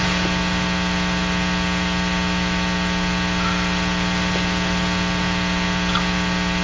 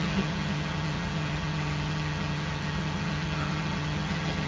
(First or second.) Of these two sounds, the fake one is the second